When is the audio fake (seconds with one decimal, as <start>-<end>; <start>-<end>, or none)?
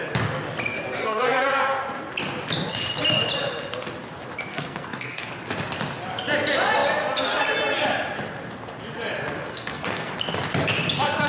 1.0-1.8; 4.5-5.3; 9.5-10.1